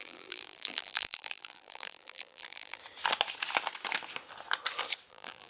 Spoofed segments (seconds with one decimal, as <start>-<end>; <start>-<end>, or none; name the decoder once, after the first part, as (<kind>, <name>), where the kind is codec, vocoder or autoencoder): 0.0-2.8 (vocoder, BigVGAN v2); 5.1-5.5